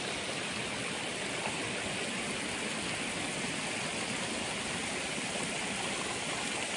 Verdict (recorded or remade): recorded